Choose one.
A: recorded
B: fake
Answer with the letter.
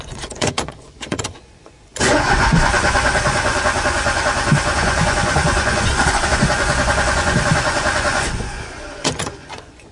B